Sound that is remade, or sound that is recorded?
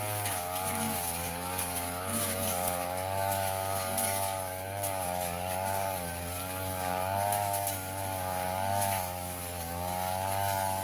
remade